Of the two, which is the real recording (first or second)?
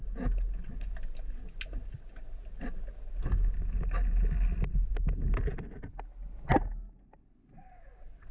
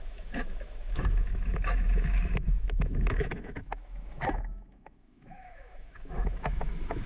first